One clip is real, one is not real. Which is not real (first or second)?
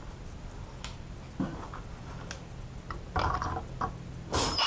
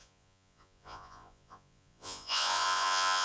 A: second